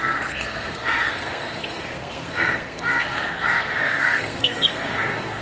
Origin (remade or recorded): remade